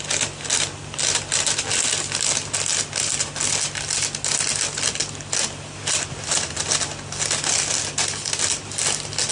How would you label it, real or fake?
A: real